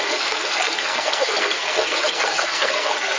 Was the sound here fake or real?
fake